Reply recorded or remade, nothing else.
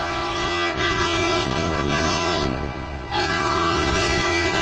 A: remade